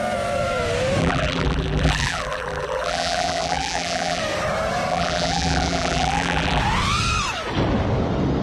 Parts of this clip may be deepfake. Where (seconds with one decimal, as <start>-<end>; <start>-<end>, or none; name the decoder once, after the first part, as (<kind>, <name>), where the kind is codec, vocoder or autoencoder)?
1.0-4.2 (vocoder, BigVGAN v2); 4.9-6.6

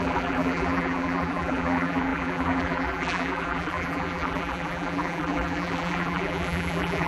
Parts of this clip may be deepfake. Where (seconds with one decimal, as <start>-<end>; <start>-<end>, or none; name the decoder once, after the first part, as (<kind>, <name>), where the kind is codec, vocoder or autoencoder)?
0.0-7.1 (vocoder, BigVGAN v2)

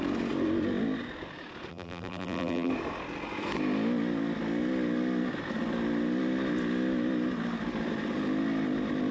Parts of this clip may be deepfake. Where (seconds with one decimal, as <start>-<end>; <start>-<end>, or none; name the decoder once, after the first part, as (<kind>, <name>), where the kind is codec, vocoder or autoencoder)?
1.7-2.7 (vocoder, BigVGAN v2)

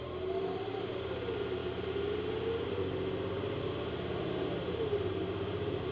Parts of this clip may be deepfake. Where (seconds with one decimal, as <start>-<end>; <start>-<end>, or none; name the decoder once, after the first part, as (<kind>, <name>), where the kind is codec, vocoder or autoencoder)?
none

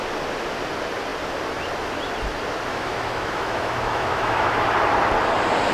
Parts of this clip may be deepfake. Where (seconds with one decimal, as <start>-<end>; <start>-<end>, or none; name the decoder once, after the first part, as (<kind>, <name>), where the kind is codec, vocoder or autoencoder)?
2.7-4.7 (autoencoder, DAC-VAE)

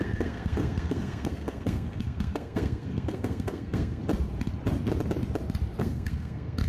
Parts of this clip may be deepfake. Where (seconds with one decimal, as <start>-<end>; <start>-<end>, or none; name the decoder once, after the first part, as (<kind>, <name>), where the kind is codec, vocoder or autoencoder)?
0.0-4.0 (codec, SNAC); 5.8-6.7